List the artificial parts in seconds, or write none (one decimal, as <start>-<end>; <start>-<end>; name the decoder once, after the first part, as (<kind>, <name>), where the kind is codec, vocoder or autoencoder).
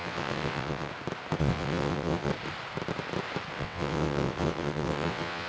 0.0-0.9 (vocoder, WaveNeXt); 1.4-2.3; 3.5-5.5